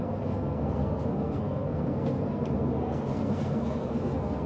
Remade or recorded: remade